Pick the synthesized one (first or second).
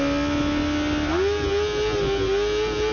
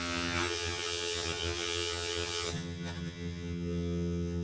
second